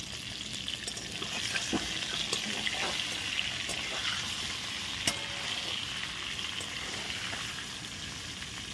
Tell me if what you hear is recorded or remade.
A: recorded